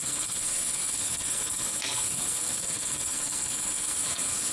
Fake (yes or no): yes